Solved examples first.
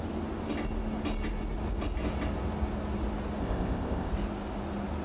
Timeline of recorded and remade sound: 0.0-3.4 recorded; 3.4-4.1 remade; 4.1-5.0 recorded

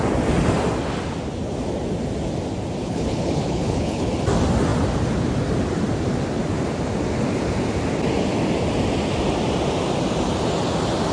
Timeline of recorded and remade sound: 0.0-2.8 recorded; 2.8-4.1 remade; 4.1-11.1 recorded

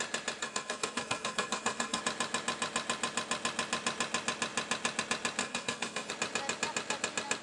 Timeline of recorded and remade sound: 0.0-0.4 recorded; 0.4-2.0 remade; 2.0-5.4 recorded; 5.4-6.1 remade; 6.1-7.4 recorded

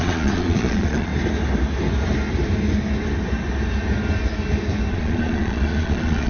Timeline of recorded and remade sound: 0.0-1.1 remade; 1.1-4.9 recorded; 4.9-6.3 remade

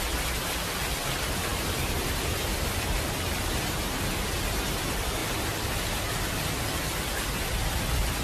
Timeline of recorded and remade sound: 0.0-5.2 recorded; 5.2-6.2 remade; 6.2-8.2 recorded

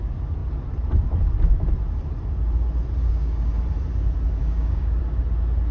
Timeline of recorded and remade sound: 0.0-3.0 recorded; 3.0-3.5 remade; 3.5-4.4 recorded; 4.4-5.0 remade; 5.0-5.7 recorded